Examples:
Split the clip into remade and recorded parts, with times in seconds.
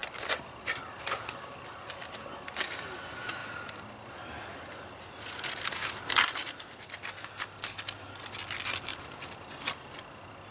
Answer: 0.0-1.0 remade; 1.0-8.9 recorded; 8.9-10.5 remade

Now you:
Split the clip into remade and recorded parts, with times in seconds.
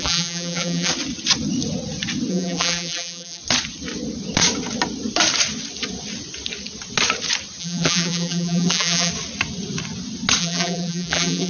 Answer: 0.0-0.9 remade; 0.9-2.3 recorded; 2.3-3.4 remade; 3.4-7.6 recorded; 7.6-9.1 remade; 9.1-10.4 recorded; 10.4-11.5 remade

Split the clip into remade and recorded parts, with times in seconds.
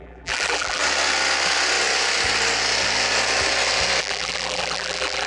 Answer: 0.0-0.8 remade; 0.8-4.0 recorded; 4.0-5.3 remade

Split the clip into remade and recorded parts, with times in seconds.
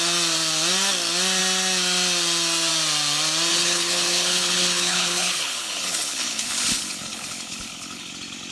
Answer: 0.0-3.5 recorded; 3.5-8.1 remade; 8.1-8.5 recorded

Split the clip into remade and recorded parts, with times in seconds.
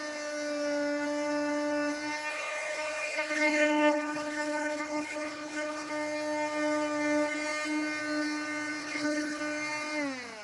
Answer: 0.0-2.3 recorded; 2.3-5.9 remade; 5.9-8.8 recorded; 8.8-9.4 remade; 9.4-10.4 recorded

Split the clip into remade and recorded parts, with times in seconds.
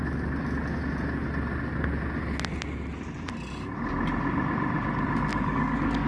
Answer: 0.0-5.3 recorded; 5.3-6.1 remade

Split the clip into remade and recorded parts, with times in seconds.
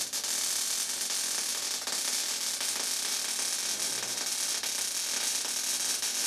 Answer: 0.0-6.3 recorded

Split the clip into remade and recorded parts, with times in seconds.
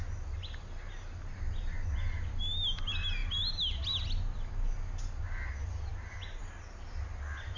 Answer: 0.0-7.6 recorded